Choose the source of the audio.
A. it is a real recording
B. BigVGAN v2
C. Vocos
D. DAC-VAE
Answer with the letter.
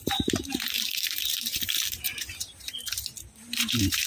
B